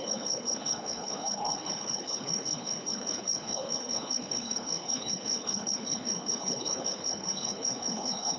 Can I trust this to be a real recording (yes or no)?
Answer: no